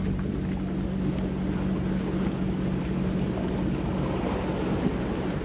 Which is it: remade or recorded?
recorded